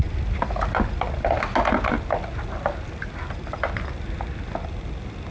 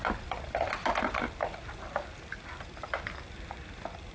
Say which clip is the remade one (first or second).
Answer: second